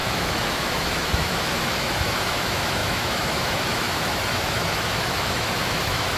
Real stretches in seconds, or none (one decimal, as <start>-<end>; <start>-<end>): none